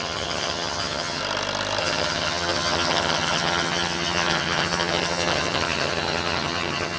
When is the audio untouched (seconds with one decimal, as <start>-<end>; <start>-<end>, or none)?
1.2-1.8